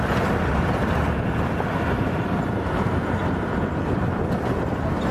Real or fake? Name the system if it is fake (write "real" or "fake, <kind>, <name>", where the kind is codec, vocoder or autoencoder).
real